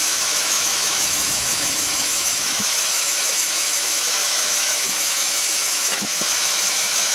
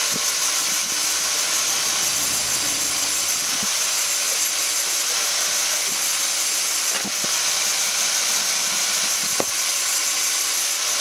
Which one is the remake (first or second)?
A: first